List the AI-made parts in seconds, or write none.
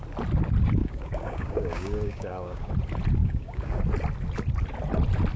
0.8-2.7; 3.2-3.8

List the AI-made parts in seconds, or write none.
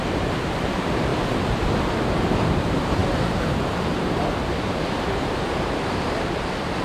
0.0-1.1; 2.6-6.8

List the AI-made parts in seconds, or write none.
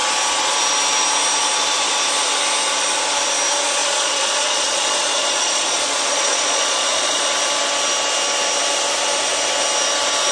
3.8-7.2